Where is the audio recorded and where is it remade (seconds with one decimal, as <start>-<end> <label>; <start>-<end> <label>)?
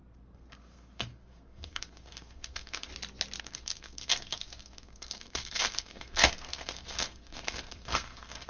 0.0-2.9 remade; 2.9-3.4 recorded; 3.4-8.5 remade